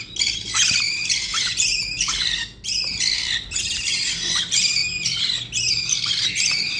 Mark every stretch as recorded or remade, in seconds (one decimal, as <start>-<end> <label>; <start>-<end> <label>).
0.0-6.8 recorded